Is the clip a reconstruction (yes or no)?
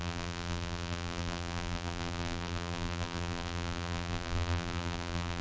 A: yes